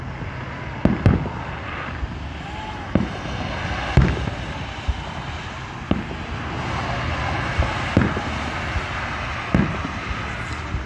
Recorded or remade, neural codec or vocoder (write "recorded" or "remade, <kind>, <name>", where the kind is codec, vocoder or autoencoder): recorded